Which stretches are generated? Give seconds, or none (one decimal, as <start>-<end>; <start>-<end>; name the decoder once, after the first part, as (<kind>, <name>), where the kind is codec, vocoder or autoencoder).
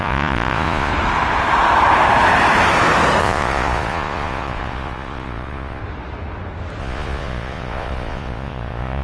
0.0-0.9 (vocoder, Vocos); 3.2-5.8; 6.8-9.0